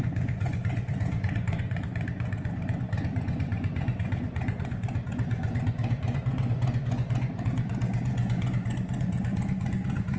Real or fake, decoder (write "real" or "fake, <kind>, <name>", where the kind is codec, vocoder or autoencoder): fake, vocoder, Vocos